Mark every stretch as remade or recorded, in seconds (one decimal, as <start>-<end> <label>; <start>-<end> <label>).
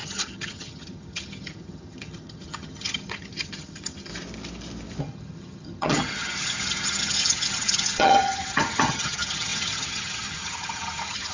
0.0-4.1 remade; 4.1-5.0 recorded; 5.0-11.3 remade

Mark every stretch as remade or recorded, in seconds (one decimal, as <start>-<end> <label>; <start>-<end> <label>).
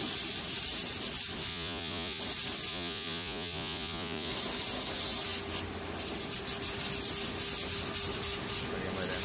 0.0-1.5 recorded; 1.5-2.2 remade; 2.2-2.7 recorded; 2.7-4.3 remade; 4.3-9.2 recorded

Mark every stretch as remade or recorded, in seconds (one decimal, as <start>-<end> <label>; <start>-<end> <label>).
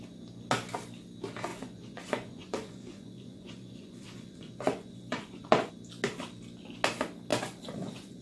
0.0-1.5 recorded; 1.5-5.7 remade; 5.7-7.3 recorded; 7.3-8.2 remade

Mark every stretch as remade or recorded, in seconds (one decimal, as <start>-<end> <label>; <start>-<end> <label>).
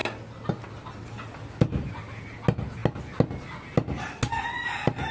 0.0-5.1 recorded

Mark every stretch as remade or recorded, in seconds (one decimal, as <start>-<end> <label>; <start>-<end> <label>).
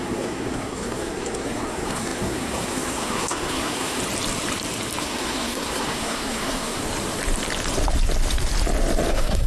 0.0-4.0 remade; 4.0-5.0 recorded; 5.0-6.8 remade; 6.8-9.1 recorded; 9.1-9.5 remade